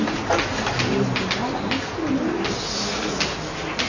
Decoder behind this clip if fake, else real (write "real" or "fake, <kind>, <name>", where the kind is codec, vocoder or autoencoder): real